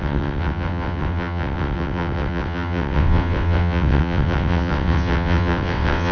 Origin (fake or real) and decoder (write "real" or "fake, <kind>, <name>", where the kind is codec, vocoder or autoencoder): fake, vocoder, WaveNeXt